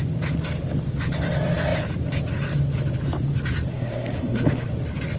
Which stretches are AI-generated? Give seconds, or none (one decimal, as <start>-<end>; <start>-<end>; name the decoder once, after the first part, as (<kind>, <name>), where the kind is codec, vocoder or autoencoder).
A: 3.7-4.7 (codec, SNAC)